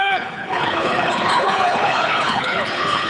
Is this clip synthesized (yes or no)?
yes